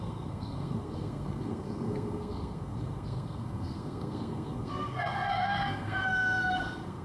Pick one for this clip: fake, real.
fake